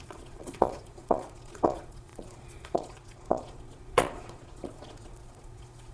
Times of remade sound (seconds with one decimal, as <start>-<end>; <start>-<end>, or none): 0.0-5.9